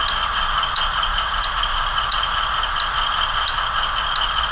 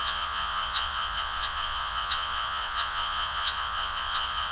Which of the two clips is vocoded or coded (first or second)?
second